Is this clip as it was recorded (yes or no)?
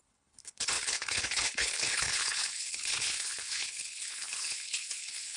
no